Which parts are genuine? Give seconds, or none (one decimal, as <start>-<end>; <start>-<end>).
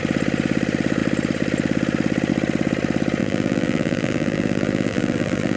0.0-3.2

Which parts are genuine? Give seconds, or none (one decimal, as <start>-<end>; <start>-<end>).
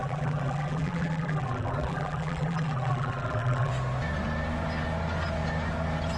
3.7-6.2